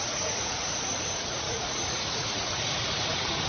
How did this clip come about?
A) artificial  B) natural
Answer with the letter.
A